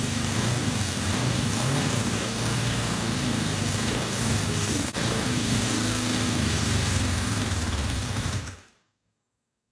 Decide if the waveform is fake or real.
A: fake